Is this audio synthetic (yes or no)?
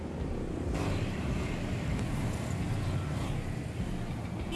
no